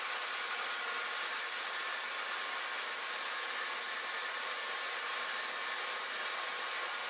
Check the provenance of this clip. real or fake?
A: real